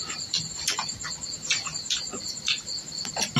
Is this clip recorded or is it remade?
recorded